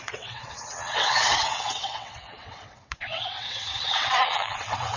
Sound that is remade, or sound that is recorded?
remade